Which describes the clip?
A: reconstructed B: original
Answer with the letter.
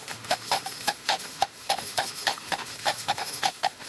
A